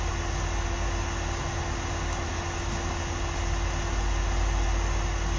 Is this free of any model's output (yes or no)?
yes